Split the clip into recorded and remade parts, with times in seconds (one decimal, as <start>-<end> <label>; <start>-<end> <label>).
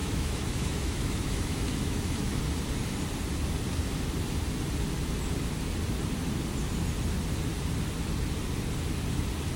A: 0.0-2.4 remade; 2.4-9.6 recorded